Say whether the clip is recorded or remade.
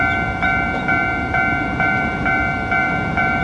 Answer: remade